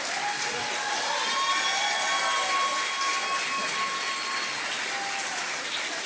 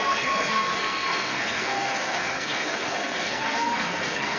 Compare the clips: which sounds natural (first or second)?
first